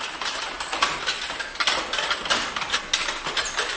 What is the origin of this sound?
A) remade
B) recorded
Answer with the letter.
B